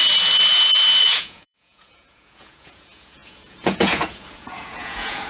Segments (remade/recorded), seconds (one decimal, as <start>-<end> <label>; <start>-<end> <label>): 0.0-1.0 recorded; 1.0-5.3 remade

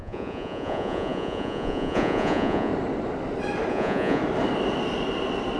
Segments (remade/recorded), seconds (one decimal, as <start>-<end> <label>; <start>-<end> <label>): 0.0-2.7 remade; 2.7-3.7 recorded; 3.7-4.2 remade; 4.2-5.6 recorded

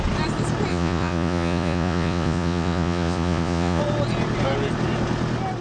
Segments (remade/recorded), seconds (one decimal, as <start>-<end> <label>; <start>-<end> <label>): 0.0-0.7 recorded; 0.7-3.8 remade; 3.8-5.6 recorded

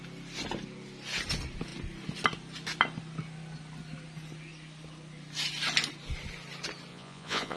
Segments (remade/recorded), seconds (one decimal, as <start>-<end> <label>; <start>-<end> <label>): 0.0-6.9 recorded; 6.9-7.6 remade